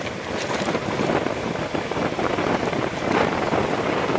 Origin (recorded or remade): remade